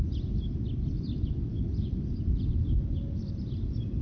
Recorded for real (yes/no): yes